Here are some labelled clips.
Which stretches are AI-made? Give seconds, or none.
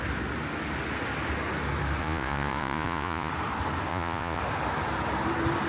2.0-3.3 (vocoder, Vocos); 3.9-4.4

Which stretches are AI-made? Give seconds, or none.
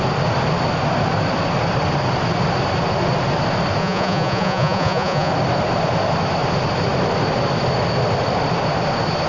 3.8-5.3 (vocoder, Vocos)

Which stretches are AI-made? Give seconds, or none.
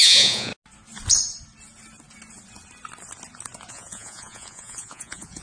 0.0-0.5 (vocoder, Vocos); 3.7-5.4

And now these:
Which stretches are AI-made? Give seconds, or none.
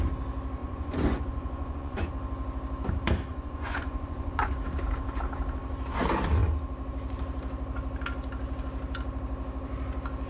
0.6-2.1 (vocoder, Vocos); 3.3-4.5